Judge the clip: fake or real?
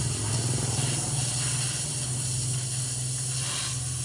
real